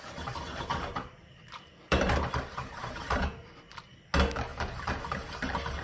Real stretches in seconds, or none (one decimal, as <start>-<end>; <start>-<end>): 0.0-0.7; 3.5-4.5; 5.3-5.8